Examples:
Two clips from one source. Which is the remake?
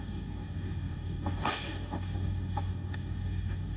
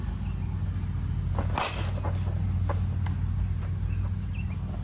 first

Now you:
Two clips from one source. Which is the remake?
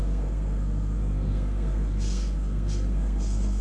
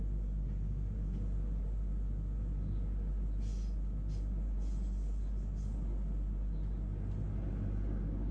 first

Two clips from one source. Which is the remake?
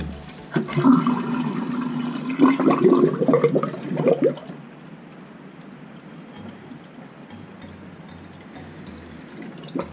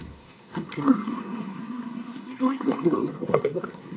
second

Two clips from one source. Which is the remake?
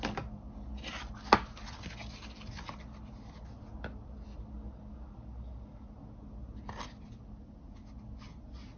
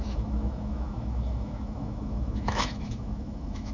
second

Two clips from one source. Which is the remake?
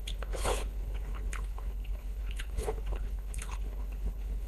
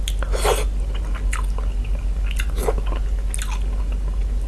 first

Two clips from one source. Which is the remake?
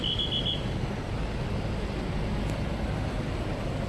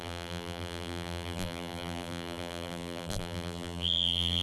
second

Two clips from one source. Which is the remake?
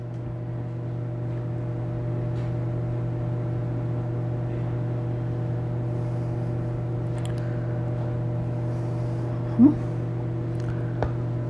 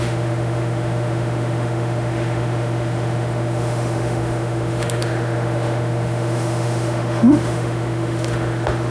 second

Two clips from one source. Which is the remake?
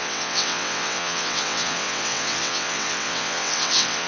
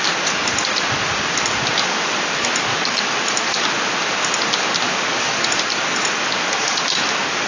first